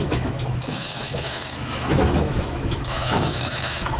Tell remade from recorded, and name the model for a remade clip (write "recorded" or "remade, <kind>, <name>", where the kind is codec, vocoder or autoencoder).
remade, autoencoder, DAC-VAE